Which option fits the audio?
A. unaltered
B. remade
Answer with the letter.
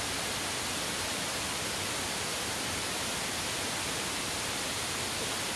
A